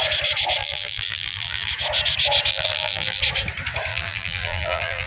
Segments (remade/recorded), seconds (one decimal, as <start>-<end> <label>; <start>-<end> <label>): 0.0-0.6 recorded; 0.6-1.7 remade; 1.7-2.5 recorded; 2.5-3.2 remade; 3.2-3.9 recorded; 3.9-5.1 remade